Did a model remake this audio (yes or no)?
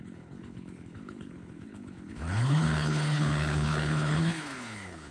yes